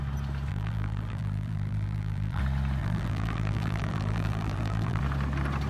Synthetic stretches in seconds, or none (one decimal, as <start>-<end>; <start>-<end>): 0.5-2.4; 2.8-5.0